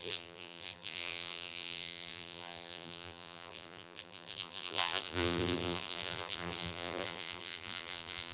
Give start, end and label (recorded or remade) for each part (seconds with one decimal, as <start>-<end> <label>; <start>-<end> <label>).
0.0-8.3 remade